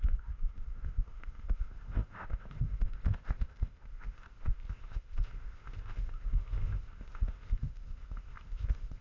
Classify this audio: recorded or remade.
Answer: remade